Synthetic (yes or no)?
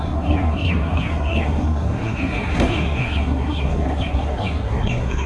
yes